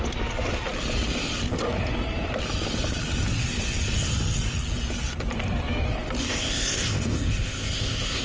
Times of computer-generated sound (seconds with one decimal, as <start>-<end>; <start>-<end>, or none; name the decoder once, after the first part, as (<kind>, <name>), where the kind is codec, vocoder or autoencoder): 6.2-8.2 (codec, ZipCodec)